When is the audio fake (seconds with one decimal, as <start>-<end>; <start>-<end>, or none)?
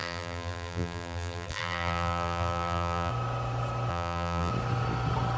0.0-3.1; 3.9-4.5